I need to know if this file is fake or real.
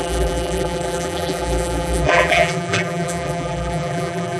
fake